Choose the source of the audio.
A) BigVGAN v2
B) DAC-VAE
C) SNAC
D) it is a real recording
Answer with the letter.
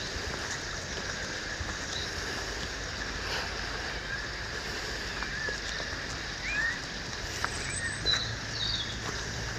D